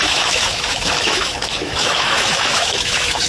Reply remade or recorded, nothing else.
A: remade